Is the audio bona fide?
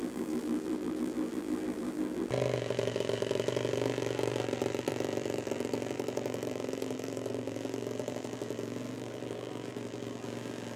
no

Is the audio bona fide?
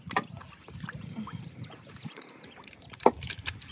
no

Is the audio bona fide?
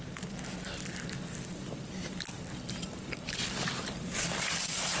no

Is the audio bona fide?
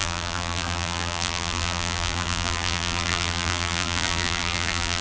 no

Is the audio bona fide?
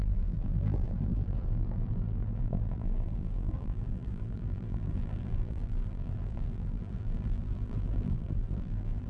no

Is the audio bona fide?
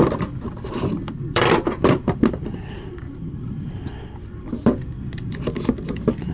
no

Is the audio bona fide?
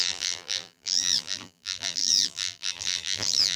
no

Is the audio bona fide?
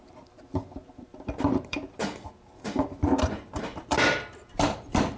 no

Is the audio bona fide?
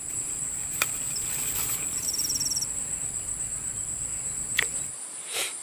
yes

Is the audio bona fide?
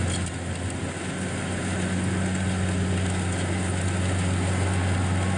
yes